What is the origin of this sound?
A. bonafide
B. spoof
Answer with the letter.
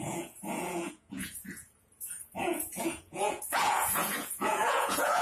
B